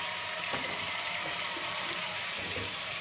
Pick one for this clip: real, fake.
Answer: fake